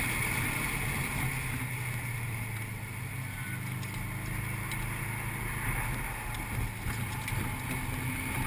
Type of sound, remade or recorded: recorded